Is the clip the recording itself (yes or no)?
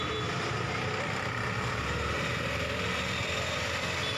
yes